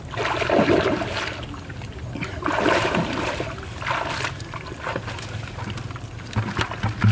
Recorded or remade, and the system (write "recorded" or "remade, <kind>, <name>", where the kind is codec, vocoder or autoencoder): recorded